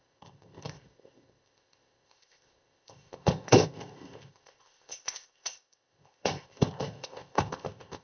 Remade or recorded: remade